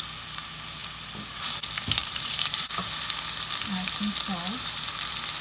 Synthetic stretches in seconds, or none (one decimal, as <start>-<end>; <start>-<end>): 2.0-2.7